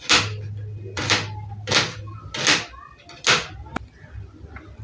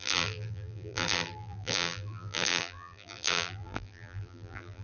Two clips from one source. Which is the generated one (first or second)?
second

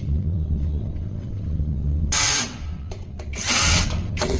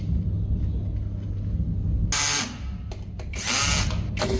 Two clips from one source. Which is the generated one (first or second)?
first